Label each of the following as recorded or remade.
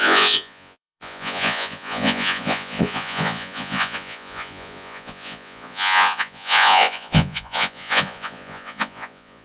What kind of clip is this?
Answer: remade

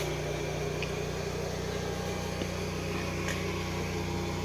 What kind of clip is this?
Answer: recorded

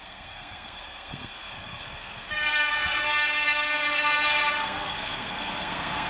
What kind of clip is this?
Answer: remade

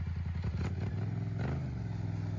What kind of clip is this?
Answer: recorded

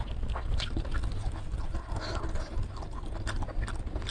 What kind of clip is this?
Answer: recorded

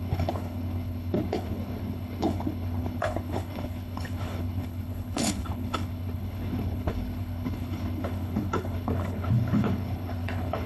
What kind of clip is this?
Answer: remade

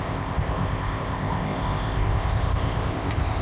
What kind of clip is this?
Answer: remade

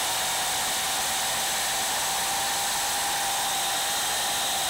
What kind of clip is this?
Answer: recorded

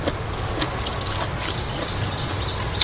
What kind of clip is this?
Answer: recorded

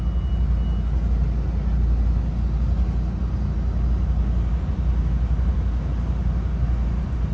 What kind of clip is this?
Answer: recorded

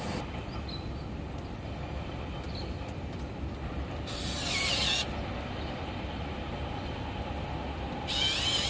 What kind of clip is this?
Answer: recorded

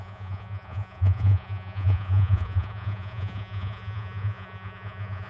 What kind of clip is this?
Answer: remade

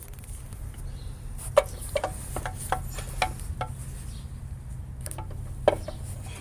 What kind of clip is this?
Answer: recorded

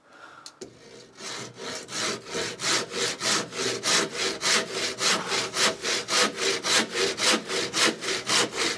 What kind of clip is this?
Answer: recorded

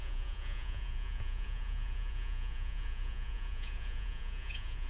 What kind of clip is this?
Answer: remade